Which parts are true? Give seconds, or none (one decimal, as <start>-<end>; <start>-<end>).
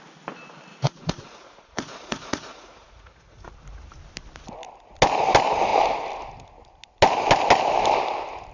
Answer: 0.0-0.7; 3.5-8.5